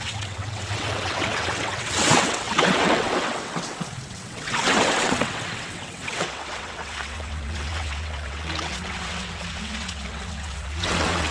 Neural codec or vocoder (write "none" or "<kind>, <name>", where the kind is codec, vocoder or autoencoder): vocoder, WaveNeXt